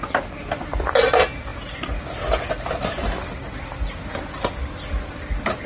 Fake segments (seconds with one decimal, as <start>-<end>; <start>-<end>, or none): none